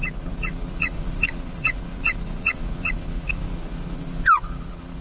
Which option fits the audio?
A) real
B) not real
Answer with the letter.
B